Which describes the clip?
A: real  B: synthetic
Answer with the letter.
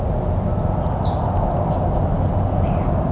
A